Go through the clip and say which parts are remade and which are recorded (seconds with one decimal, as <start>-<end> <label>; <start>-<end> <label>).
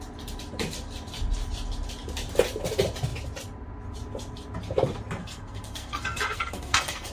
0.0-5.2 recorded; 5.2-7.1 remade